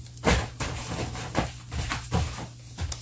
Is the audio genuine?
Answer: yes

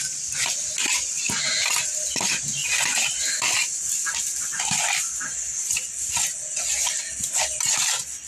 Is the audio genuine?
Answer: yes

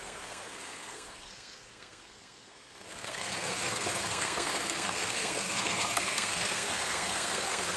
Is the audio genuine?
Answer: no